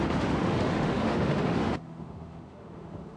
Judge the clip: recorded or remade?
remade